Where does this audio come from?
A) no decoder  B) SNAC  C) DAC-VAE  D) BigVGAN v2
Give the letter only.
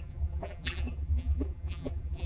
D